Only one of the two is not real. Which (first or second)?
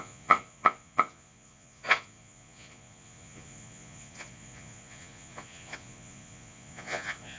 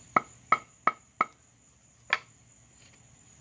first